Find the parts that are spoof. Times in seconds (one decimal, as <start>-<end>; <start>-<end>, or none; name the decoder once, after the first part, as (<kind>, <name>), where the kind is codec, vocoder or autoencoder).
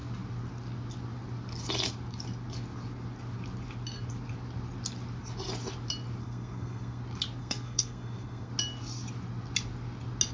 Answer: 6.2-7.0 (codec, SNAC); 7.4-8.5